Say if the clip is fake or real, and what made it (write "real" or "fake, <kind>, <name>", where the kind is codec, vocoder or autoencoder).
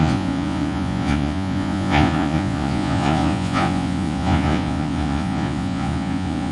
fake, vocoder, Vocos